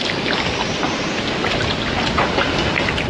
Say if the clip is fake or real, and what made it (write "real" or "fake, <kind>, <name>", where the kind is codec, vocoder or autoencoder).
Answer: real